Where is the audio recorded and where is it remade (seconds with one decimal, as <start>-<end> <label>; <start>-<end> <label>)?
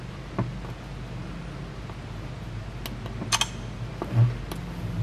0.0-5.0 recorded